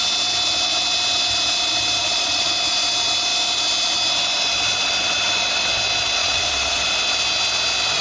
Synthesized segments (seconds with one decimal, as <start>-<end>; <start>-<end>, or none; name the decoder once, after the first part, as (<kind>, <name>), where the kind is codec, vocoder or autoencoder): 2.0-2.5 (vocoder, Vocos); 6.2-6.8